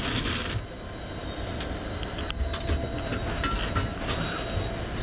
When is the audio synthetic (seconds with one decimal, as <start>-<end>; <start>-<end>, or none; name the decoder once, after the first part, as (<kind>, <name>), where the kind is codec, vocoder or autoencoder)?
none